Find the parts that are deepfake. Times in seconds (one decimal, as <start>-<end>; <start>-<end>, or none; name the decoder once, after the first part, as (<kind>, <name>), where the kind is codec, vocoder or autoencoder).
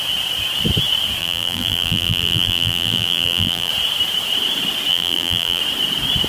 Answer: 1.2-3.7 (vocoder, BigVGAN v2); 4.9-5.6